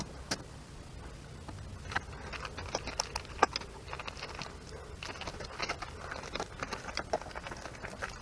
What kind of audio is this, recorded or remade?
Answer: recorded